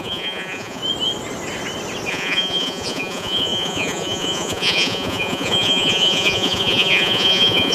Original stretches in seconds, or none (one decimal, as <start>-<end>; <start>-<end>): 0.8-2.1